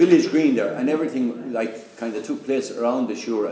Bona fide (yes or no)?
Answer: yes